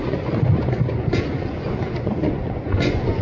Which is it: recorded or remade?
remade